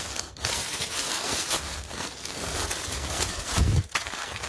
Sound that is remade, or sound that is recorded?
remade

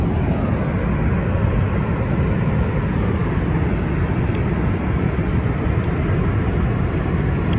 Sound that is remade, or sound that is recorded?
recorded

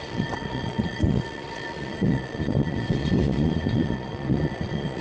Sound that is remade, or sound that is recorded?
remade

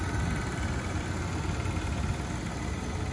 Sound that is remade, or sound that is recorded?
recorded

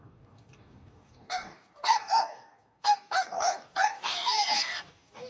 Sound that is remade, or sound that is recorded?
remade